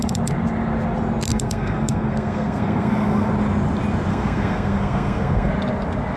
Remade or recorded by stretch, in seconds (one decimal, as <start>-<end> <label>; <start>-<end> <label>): 0.0-1.3 recorded; 1.3-3.3 remade; 3.3-4.1 recorded; 4.1-5.5 remade; 5.5-6.2 recorded